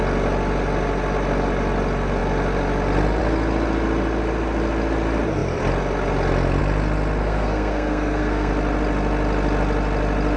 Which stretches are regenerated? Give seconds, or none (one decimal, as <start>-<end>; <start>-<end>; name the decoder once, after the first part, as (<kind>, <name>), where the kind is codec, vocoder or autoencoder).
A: 7.2-8.5 (codec, SNAC)